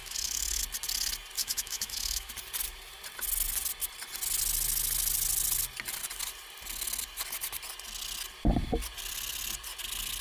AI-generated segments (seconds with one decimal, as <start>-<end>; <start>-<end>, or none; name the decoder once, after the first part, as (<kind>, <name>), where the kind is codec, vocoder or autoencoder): 0.0-0.6 (autoencoder, DAC-VAE); 1.4-2.3